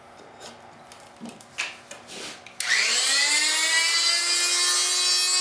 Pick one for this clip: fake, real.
real